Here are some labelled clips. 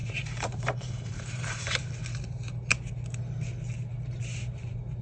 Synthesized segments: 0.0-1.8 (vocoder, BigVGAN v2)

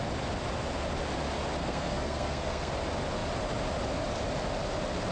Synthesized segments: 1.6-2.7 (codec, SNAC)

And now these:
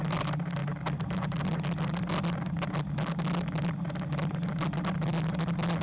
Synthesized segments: none